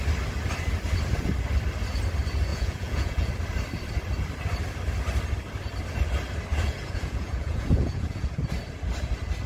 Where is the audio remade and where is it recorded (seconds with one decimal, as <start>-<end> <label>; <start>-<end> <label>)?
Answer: 0.0-2.5 recorded; 2.5-3.3 remade; 3.3-6.5 recorded; 6.5-8.3 remade; 8.3-9.5 recorded